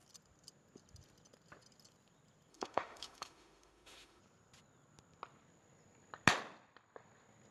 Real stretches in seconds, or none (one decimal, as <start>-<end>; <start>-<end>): 0.0-2.5; 4.2-7.5